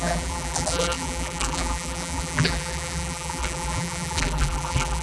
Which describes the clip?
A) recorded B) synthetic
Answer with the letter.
B